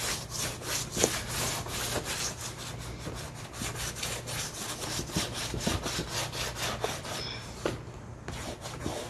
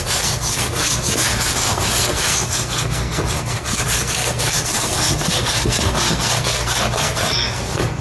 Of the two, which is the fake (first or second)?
second